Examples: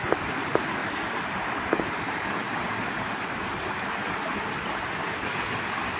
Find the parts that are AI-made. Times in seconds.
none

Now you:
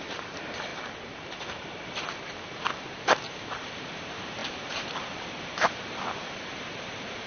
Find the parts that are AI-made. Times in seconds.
0.0-0.7 (vocoder, BigVGAN v2); 3.8-7.3

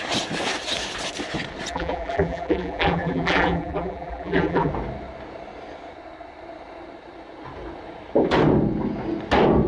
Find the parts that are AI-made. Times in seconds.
1.7-4.7 (vocoder, BigVGAN v2)

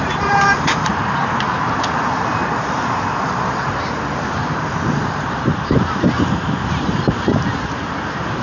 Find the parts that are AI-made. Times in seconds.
0.0-8.4 (vocoder, BigVGAN v2)